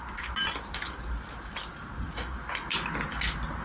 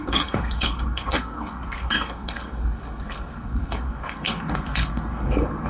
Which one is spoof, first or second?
second